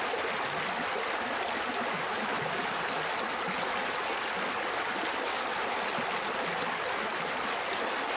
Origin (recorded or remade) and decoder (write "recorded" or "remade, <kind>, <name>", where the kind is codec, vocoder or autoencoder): recorded